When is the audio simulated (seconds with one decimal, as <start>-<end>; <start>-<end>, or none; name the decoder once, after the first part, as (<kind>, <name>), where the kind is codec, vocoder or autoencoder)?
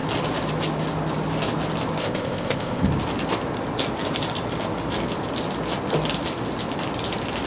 2.0-2.9 (codec, ZipCodec)